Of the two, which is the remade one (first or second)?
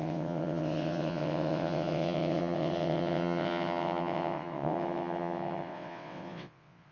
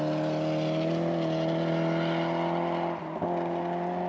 first